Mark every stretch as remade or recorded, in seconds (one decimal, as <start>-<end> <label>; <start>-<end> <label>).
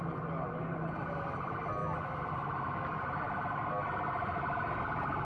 0.0-5.2 recorded